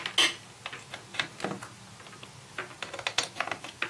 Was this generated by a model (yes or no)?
no